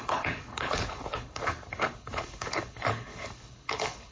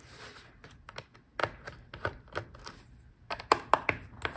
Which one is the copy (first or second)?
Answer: first